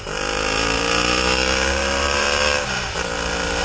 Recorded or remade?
remade